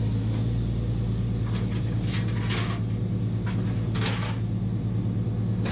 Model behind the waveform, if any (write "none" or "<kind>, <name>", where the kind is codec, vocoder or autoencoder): none